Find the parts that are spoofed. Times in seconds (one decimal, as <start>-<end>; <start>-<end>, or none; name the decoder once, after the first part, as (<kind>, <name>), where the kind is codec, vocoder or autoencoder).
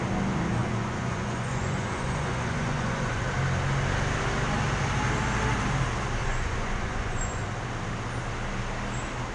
0.6-3.2 (vocoder, Vocos); 6.2-7.4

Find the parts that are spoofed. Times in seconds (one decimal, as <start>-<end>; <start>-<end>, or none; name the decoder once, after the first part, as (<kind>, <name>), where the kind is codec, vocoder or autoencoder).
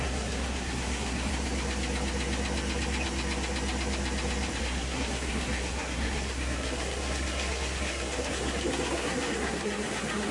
0.0-1.3 (codec, SNAC); 4.6-10.3